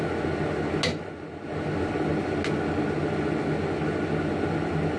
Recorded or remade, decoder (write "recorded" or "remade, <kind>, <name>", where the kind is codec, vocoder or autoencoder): recorded